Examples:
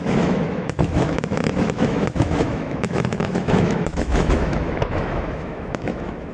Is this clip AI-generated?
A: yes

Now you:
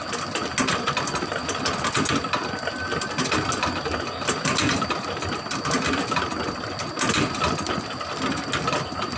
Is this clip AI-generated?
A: no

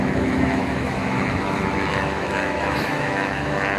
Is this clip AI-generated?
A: yes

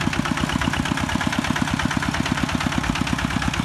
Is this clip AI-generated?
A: no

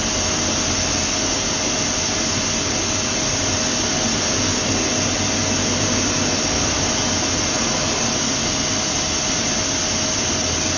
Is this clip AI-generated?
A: no